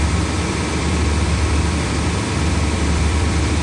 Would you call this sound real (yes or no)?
no